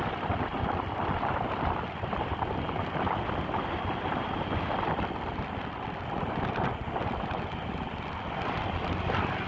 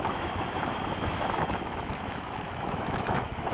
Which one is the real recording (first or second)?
first